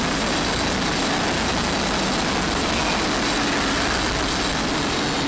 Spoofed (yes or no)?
no